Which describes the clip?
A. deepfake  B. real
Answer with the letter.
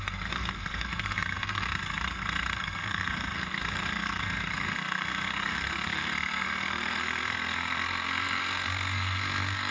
A